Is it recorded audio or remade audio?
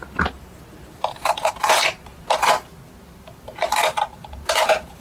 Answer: recorded